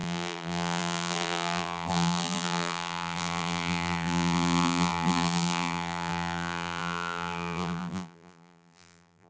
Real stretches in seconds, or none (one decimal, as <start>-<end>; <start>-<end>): none